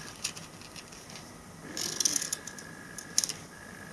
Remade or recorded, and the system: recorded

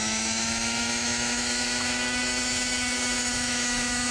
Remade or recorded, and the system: remade, autoencoder, DAC-VAE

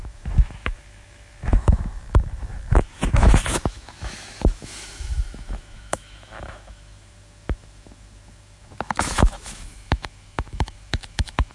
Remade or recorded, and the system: remade, autoencoder, DAC-VAE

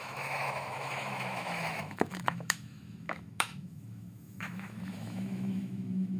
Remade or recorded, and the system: remade, autoencoder, DAC-VAE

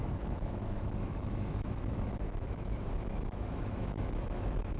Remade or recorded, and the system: remade, autoencoder, DAC-VAE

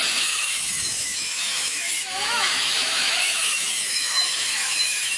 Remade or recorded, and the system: remade, autoencoder, DAC-VAE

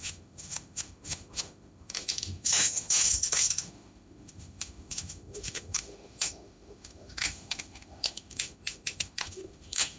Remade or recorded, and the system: remade, autoencoder, DAC-VAE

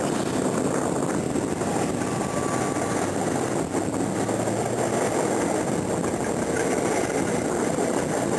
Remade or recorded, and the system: recorded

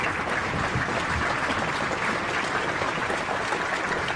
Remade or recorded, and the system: recorded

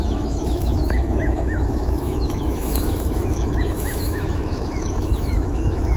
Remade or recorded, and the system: remade, autoencoder, DAC-VAE